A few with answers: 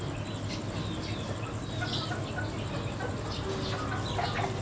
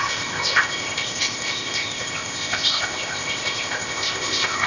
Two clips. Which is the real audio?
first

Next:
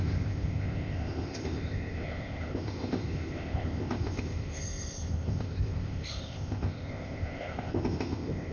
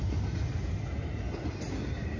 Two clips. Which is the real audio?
second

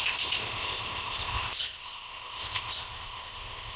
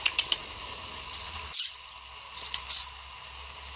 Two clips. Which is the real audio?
second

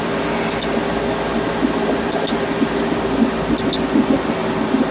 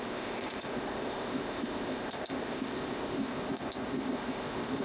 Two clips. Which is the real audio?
first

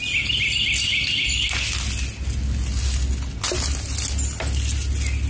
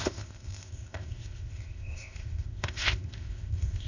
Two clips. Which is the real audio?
first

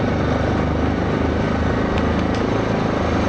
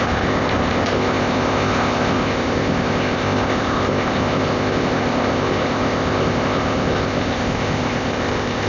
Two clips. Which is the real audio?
first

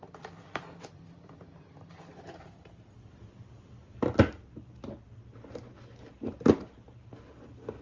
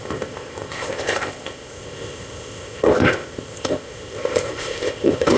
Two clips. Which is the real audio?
first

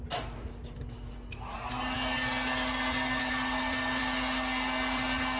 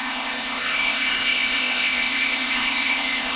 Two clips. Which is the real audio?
first